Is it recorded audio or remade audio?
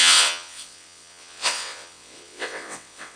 remade